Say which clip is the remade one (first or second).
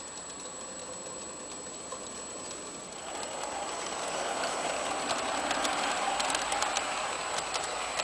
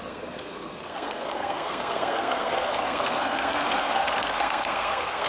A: second